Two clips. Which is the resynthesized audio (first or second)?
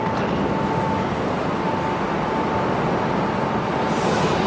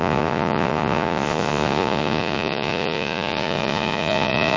second